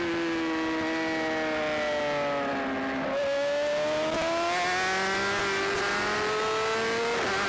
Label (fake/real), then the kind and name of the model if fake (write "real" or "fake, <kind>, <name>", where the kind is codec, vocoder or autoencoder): real